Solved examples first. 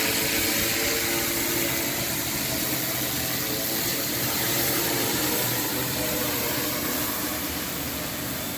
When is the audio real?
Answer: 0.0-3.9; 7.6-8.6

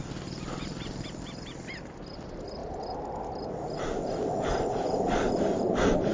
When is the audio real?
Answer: 0.0-6.1

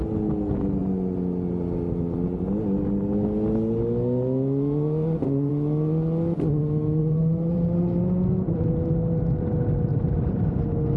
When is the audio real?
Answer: 0.0-7.0; 8.0-9.9; 10.6-11.0

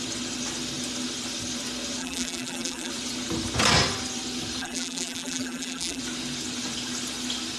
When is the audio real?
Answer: 0.0-2.0; 2.9-4.6; 6.0-7.6

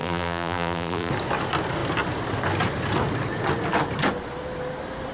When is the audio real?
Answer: 1.1-5.1

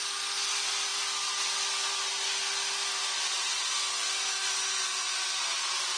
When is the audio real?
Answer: 0.0-6.0

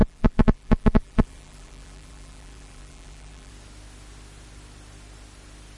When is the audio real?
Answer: 3.5-5.8